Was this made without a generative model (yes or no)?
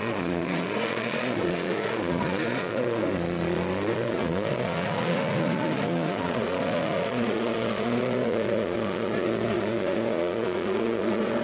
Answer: no